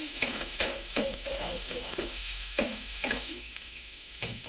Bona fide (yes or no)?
no